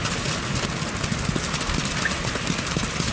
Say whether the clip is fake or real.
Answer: real